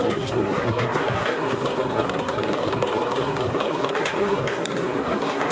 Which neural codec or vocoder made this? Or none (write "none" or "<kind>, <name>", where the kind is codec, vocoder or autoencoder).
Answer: codec, SNAC